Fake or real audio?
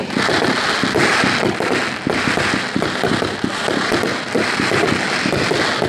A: real